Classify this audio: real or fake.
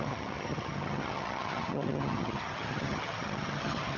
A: fake